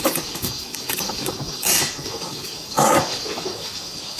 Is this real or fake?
fake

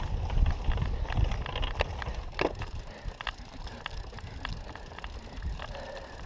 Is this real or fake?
real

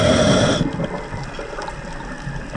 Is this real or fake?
real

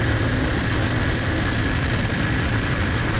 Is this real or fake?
real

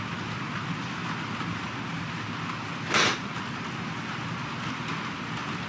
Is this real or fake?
real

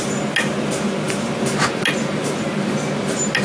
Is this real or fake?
real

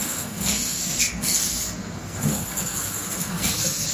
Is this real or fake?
fake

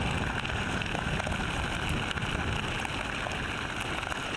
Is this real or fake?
real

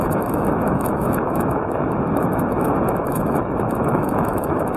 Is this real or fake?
fake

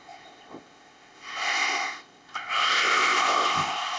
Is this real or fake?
fake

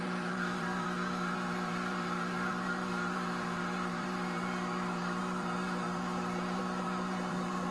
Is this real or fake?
fake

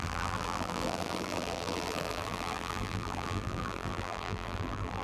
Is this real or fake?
fake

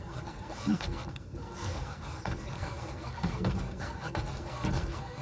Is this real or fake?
fake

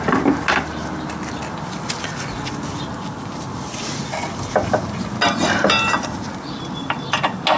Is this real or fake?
real